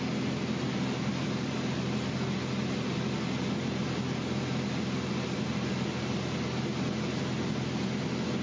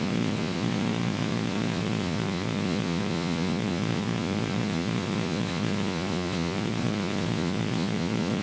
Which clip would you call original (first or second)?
first